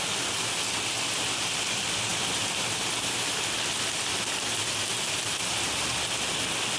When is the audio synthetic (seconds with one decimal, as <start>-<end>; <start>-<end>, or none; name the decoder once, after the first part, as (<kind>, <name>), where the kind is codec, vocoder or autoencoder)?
none